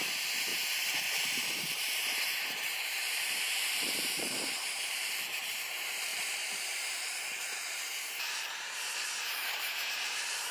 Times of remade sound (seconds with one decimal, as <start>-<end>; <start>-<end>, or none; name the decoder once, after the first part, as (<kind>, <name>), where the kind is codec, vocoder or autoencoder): 0.0-10.5 (vocoder, BigVGAN v2)